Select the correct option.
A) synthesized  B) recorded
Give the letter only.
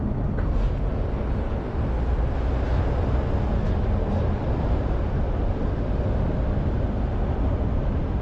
B